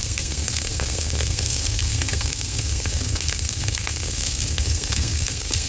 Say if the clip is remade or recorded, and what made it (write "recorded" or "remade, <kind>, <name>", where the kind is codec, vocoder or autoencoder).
remade, codec, SNAC